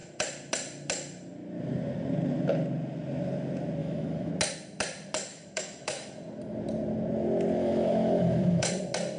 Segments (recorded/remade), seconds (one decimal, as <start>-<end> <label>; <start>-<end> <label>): 0.0-3.8 recorded; 3.8-4.3 remade; 4.3-5.3 recorded; 5.3-6.1 remade; 6.1-7.6 recorded; 7.6-8.7 remade; 8.7-9.2 recorded